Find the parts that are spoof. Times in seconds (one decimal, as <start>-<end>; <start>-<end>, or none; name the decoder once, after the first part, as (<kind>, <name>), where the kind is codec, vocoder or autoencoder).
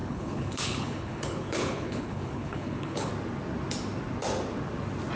0.0-3.1 (codec, HILCodec)